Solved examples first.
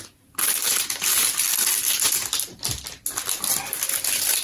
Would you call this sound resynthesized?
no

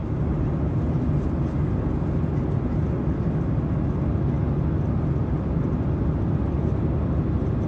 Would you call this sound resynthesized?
no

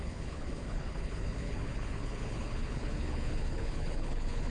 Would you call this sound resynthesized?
yes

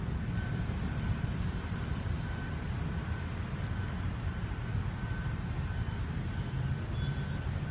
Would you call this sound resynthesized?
no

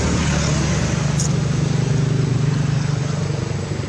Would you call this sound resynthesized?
no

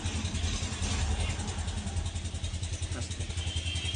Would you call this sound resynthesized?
no